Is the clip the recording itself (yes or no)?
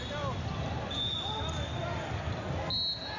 yes